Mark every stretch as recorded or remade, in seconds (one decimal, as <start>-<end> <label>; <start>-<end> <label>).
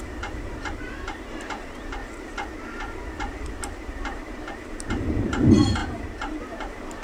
0.0-2.0 remade; 2.0-3.2 recorded; 3.2-7.0 remade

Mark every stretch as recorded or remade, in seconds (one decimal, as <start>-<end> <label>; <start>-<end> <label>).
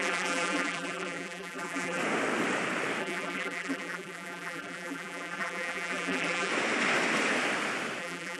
0.0-2.0 remade; 2.0-3.0 recorded; 3.0-6.5 remade; 6.5-8.0 recorded; 8.0-8.4 remade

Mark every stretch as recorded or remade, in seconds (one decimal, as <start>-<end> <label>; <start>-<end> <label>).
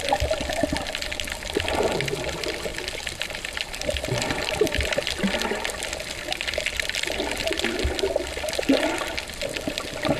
0.0-2.7 recorded; 2.7-5.1 remade; 5.1-10.2 recorded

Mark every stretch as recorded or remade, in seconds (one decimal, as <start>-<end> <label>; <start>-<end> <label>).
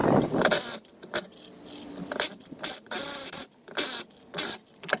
0.0-3.4 remade; 3.4-4.4 recorded; 4.4-5.0 remade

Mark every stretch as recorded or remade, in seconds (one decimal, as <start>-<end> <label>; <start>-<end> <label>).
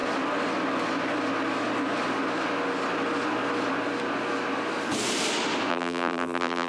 0.0-5.7 recorded; 5.7-6.7 remade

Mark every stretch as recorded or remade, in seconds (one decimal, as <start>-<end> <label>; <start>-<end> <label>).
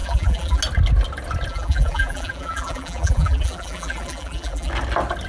0.0-0.6 remade; 0.6-1.5 recorded; 1.5-4.7 remade; 4.7-5.3 recorded